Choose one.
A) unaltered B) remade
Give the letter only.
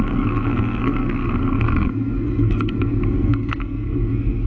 B